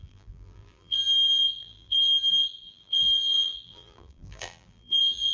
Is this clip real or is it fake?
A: fake